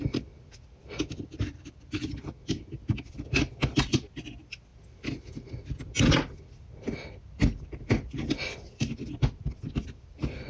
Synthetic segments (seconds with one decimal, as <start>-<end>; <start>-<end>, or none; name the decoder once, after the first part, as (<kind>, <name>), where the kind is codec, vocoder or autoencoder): none